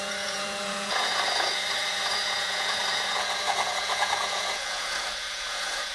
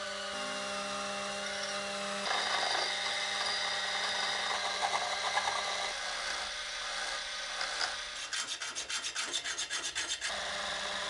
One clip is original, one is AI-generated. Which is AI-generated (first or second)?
first